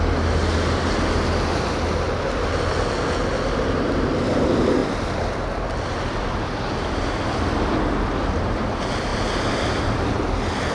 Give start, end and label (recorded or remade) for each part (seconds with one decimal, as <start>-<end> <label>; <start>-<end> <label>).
0.0-10.7 recorded